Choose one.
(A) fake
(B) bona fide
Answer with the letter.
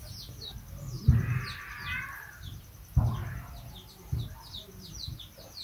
B